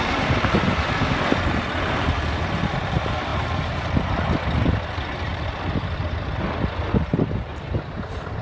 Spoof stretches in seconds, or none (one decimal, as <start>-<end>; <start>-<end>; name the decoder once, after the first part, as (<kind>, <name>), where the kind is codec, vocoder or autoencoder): 0.0-8.4 (vocoder, BigVGAN v2)